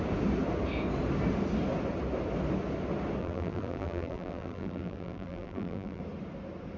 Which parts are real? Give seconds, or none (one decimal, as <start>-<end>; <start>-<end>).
0.0-3.2; 6.0-6.8